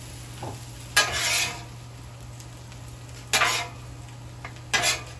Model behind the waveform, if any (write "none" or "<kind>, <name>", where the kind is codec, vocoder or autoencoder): none